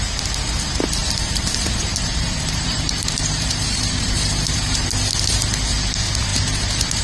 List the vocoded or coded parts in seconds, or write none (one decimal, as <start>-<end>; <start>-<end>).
1.0-4.9; 6.3-7.0